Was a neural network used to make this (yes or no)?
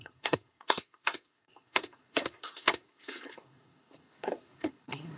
yes